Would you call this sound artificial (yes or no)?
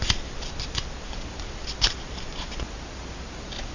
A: no